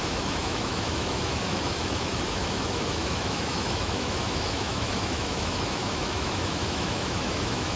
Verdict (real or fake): fake